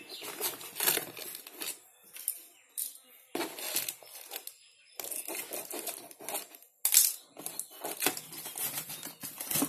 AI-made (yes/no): no